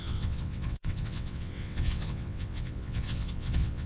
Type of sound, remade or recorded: remade